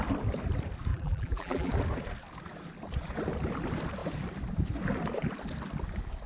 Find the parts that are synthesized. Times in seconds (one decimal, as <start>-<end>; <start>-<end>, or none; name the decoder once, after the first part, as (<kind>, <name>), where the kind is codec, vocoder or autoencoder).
0.9-1.7 (vocoder, BigVGAN v2)